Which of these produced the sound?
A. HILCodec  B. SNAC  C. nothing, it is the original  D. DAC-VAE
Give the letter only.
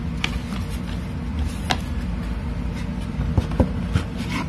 C